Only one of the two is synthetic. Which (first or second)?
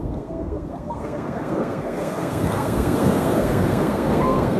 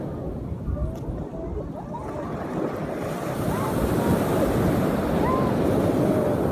first